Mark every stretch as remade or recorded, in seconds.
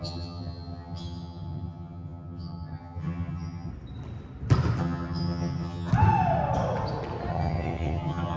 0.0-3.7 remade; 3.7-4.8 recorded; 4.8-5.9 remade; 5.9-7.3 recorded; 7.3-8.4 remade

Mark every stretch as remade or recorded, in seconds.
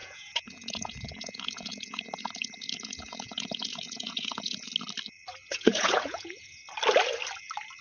0.0-4.7 remade; 4.7-5.5 recorded; 5.5-6.6 remade; 6.6-7.8 recorded